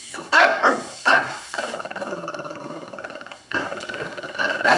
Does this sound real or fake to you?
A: fake